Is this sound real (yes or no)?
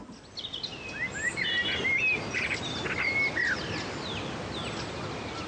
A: yes